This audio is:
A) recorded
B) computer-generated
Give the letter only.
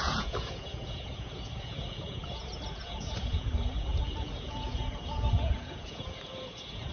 B